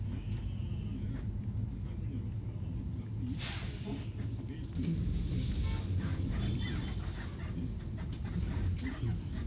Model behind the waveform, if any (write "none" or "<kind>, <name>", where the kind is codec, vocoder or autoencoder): none